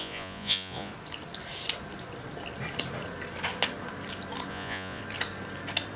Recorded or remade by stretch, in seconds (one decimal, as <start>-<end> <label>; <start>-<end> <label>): 0.0-0.9 remade; 0.9-4.5 recorded; 4.5-5.0 remade; 5.0-6.0 recorded